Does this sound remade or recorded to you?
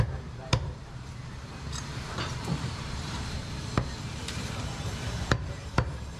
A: remade